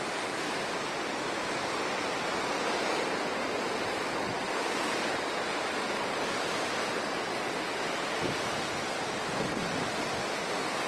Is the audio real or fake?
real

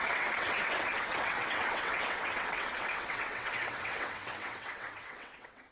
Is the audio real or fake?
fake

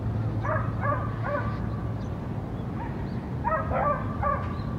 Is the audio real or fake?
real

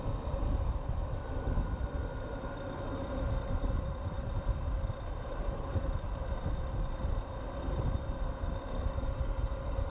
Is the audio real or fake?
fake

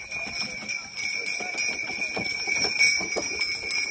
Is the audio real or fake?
real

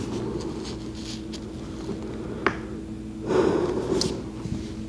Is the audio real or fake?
real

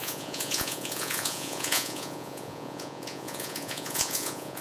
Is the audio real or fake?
fake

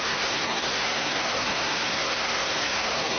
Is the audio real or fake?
fake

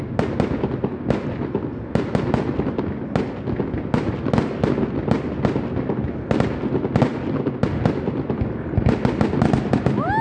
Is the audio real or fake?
real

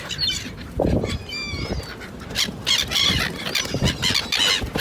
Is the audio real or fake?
real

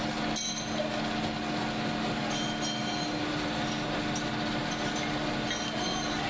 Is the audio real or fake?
real